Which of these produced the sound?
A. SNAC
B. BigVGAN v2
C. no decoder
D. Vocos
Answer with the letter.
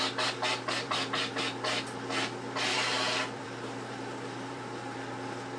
B